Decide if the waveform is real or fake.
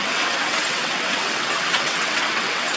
fake